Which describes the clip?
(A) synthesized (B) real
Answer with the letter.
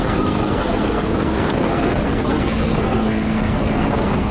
A